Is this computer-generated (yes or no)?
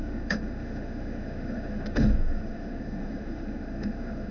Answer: yes